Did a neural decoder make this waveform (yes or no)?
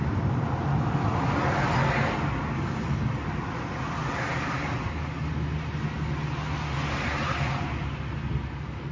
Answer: no